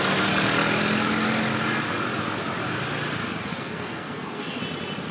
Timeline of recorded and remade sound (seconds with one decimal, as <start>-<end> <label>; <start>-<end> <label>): 0.0-3.5 recorded; 3.5-4.6 remade; 4.6-5.1 recorded